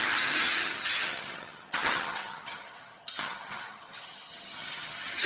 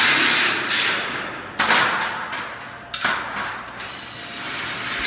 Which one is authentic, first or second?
second